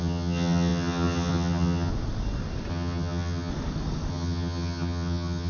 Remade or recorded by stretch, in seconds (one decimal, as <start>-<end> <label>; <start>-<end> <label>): 0.0-1.9 remade; 1.9-2.7 recorded; 2.7-3.5 remade; 3.5-4.1 recorded; 4.1-5.5 remade